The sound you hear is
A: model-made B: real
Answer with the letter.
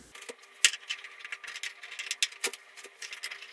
B